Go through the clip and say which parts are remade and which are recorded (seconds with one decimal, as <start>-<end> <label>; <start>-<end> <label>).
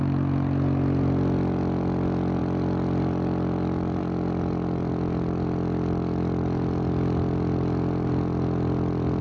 0.0-2.4 recorded; 2.4-4.0 remade; 4.0-9.2 recorded